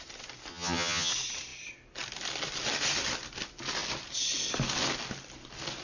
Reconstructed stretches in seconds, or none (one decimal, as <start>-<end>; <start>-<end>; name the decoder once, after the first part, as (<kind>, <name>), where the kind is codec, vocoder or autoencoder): 0.5-1.1 (vocoder, HiFi-GAN)